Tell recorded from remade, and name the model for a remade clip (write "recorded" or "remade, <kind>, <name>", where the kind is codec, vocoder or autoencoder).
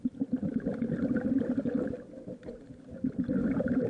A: recorded